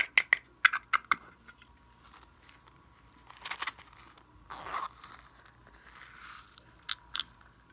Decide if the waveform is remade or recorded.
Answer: recorded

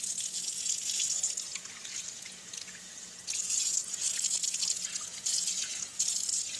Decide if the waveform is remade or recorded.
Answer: remade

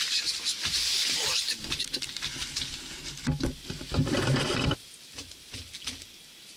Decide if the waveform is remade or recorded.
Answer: recorded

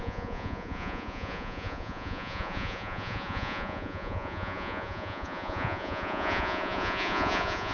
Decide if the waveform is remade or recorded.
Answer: remade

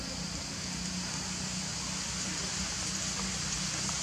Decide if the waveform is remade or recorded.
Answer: recorded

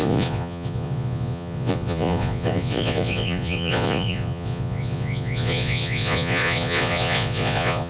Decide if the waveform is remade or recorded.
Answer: remade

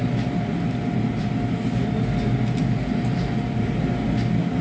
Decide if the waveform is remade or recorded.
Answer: recorded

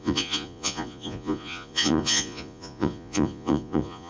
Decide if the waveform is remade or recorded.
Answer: remade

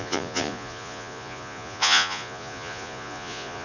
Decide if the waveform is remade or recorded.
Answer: remade